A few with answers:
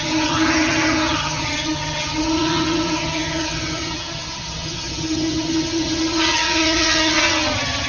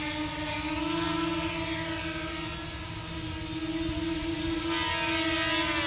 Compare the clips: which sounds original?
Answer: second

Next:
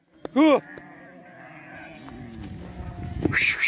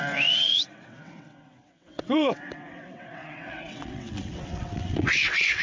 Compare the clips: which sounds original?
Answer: first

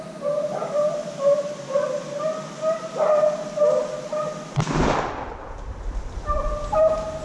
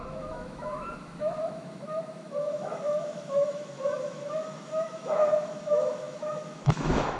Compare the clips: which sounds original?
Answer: first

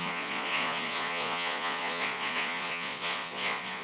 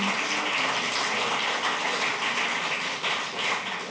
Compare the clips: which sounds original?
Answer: second